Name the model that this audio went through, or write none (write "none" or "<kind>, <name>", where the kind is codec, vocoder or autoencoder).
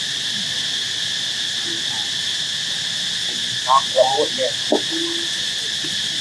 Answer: none